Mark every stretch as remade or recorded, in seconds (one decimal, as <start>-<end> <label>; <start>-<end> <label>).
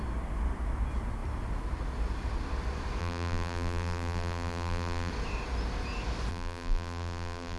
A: 0.0-3.0 recorded; 3.0-5.1 remade; 5.1-6.3 recorded; 6.3-7.6 remade